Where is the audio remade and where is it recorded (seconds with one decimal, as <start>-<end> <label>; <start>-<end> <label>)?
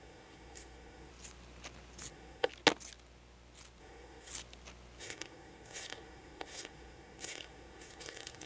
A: 0.0-1.1 remade; 1.1-2.1 recorded; 2.1-2.5 remade; 2.5-3.8 recorded; 3.8-4.3 remade; 4.3-5.0 recorded; 5.0-8.5 remade